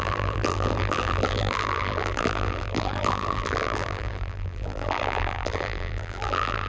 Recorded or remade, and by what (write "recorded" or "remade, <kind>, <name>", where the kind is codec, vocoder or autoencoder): remade, vocoder, BigVGAN v2